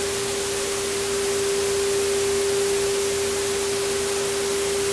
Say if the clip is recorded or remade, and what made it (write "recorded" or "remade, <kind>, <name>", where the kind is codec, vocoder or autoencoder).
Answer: recorded